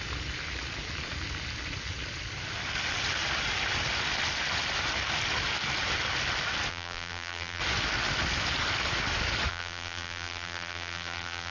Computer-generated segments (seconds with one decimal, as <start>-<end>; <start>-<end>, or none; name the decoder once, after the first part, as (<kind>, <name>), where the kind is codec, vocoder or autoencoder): 6.7-7.6 (vocoder, BigVGAN v2); 9.5-11.5